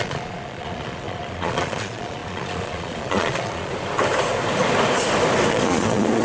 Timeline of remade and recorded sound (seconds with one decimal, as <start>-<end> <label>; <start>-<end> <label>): 0.0-3.7 remade; 3.7-5.5 recorded; 5.5-6.2 remade